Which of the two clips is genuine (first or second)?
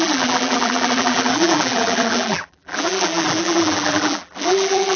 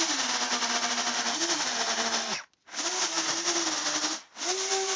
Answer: second